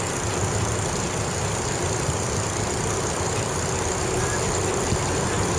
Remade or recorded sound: recorded